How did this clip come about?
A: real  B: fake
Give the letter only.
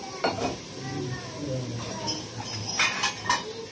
A